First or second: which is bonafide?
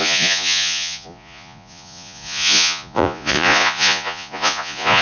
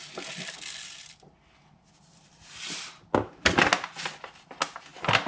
second